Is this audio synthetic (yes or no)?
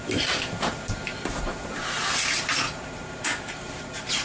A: yes